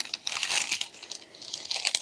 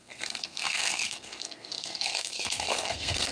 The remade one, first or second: second